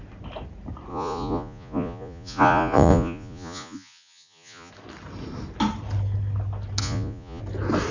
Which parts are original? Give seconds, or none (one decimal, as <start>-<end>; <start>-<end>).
0.0-0.9; 4.7-6.8; 7.4-7.9